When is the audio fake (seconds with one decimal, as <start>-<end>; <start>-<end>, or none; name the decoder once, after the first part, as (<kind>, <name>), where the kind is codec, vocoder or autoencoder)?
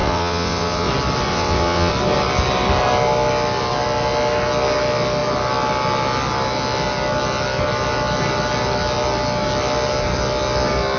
0.0-0.9 (vocoder, WaveNeXt); 1.3-1.9